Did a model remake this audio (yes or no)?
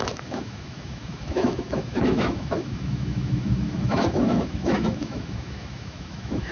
yes